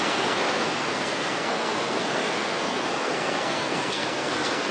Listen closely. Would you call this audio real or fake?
fake